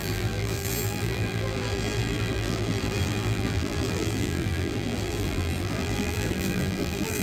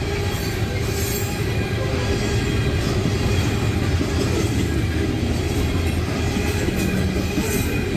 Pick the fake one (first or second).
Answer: first